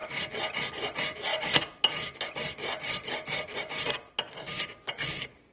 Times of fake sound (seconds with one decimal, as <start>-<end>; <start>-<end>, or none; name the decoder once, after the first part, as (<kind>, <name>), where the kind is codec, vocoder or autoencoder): none